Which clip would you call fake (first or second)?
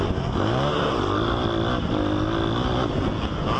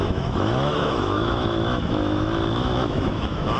second